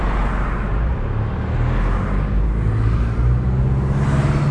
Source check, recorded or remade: recorded